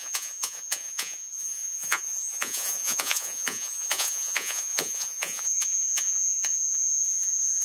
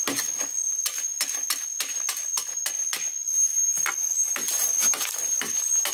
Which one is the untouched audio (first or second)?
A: second